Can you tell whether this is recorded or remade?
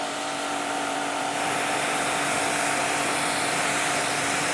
remade